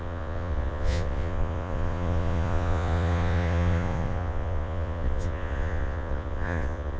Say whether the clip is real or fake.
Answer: fake